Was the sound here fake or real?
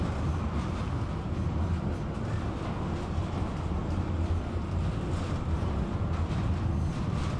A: real